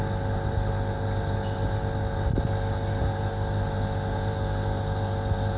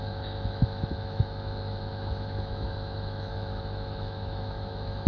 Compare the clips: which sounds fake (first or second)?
second